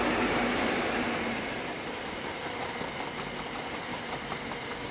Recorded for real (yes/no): yes